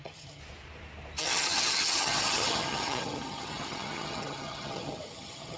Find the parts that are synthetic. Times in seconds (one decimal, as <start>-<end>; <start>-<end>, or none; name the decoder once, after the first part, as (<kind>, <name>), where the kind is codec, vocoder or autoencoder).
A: 0.0-0.4 (vocoder, HiFi-GAN); 1.2-5.6